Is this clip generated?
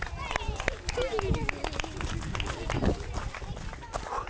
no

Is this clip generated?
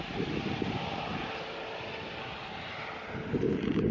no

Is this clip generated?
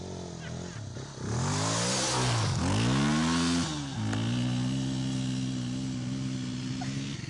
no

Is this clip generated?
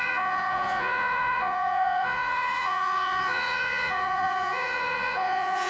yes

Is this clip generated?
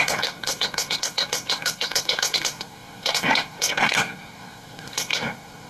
yes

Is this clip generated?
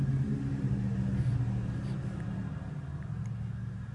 no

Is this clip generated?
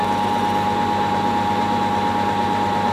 no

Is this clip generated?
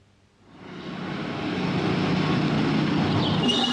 no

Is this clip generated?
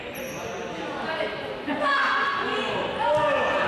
no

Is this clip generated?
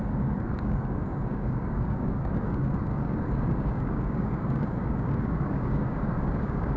yes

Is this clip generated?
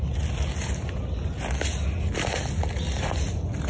no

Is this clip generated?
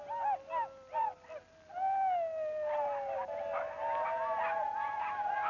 no